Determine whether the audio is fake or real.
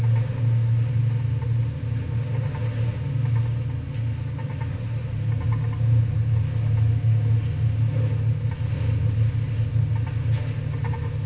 real